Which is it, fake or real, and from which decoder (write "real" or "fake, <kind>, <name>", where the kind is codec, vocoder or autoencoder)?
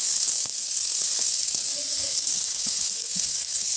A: fake, codec, SNAC